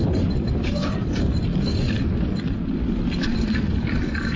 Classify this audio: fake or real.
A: real